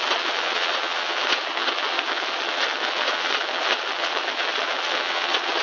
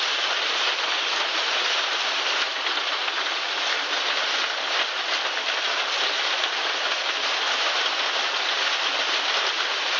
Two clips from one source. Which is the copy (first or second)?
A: first